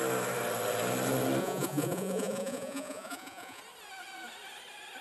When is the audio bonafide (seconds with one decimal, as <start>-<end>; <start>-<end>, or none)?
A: 0.0-1.4; 3.6-5.0